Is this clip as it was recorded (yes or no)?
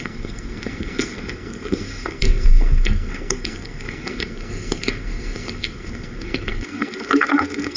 no